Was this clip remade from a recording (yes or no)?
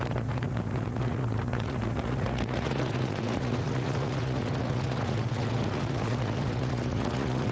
yes